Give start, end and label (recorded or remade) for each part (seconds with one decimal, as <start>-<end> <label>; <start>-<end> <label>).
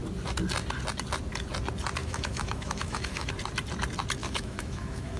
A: 0.0-2.0 recorded; 2.0-3.3 remade; 3.3-4.2 recorded; 4.2-5.2 remade